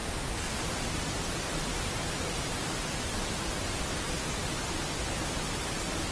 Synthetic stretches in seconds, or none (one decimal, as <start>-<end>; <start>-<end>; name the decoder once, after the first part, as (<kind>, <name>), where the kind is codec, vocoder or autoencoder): 0.0-0.5 (codec, SNAC)